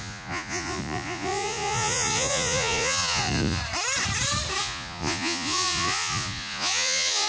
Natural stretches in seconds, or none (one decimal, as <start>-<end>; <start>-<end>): 3.6-4.6